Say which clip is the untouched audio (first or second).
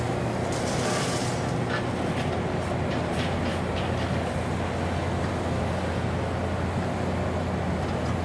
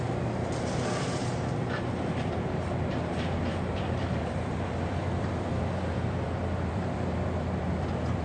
first